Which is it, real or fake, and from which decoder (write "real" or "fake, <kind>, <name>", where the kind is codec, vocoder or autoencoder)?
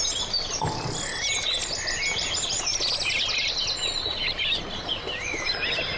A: real